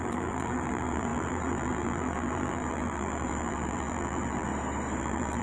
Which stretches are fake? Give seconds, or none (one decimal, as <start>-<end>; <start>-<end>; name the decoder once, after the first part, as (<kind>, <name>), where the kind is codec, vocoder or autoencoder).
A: 0.0-4.5 (vocoder, BigVGAN v2); 5.0-5.4